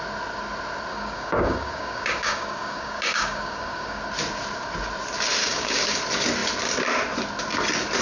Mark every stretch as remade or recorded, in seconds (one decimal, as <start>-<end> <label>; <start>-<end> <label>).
0.0-0.9 recorded; 0.9-4.0 remade; 4.0-5.4 recorded; 5.4-6.0 remade; 6.0-8.0 recorded